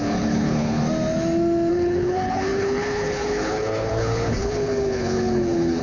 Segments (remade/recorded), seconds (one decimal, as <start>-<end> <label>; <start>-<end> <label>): 0.0-0.8 remade; 0.8-1.7 recorded; 1.7-5.8 remade